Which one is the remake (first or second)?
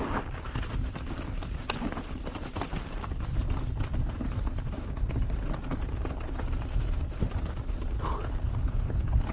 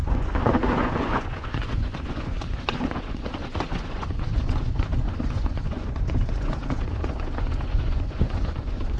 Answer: second